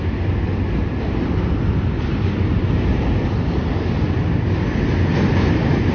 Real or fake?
real